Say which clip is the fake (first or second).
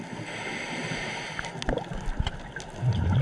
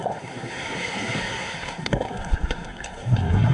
second